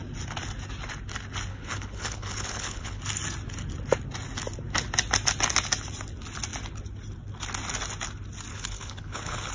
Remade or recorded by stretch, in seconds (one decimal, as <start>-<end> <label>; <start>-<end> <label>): 0.0-1.5 recorded; 1.5-3.0 remade; 3.0-8.5 recorded; 8.5-9.5 remade